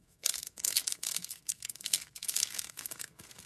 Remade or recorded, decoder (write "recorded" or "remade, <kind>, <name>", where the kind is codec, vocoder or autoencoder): remade, codec, SNAC